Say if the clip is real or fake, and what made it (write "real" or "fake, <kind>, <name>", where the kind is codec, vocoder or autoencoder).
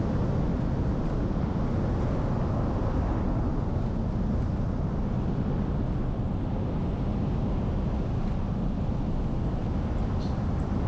real